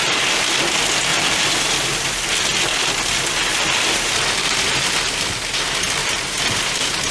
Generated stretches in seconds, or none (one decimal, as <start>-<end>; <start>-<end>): 6.0-7.1